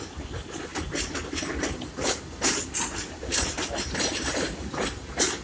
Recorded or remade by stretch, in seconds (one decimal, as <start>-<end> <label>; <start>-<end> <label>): 0.0-5.4 recorded